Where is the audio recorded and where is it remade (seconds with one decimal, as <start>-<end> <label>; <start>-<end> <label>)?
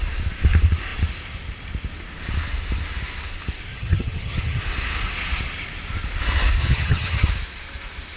0.0-3.7 recorded; 3.7-4.6 remade; 4.6-6.6 recorded; 6.6-7.3 remade; 7.3-8.2 recorded